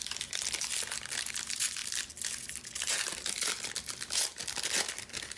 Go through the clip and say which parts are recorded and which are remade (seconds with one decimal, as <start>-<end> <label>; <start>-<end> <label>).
0.0-5.4 recorded